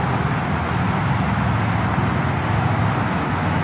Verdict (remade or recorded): recorded